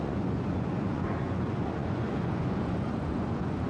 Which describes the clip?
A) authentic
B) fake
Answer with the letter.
B